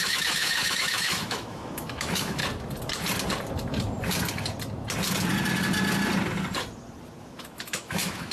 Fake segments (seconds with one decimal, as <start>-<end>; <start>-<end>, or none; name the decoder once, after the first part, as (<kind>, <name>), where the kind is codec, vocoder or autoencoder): 0.0-2.4 (autoencoder, DAC-VAE); 7.2-8.3